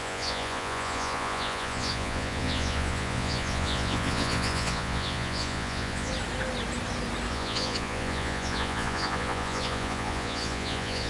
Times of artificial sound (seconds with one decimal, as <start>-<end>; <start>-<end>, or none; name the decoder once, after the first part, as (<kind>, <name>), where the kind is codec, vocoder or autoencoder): 0.0-6.1 (vocoder, Vocos); 7.3-11.1